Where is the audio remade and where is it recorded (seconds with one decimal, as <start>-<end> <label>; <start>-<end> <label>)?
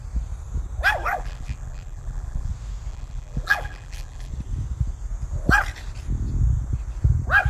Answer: 0.0-1.1 recorded; 1.1-2.5 remade; 2.5-2.9 recorded; 2.9-4.3 remade; 4.3-7.5 recorded